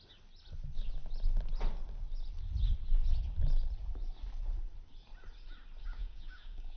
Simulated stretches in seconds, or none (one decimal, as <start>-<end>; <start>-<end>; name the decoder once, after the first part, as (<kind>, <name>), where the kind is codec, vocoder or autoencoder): 5.8-6.8 (codec, DAC)